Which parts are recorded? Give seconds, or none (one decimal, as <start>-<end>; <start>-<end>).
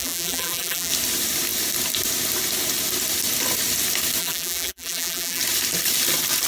0.9-4.2; 5.4-6.5